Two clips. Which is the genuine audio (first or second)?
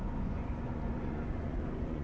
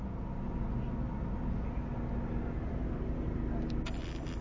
second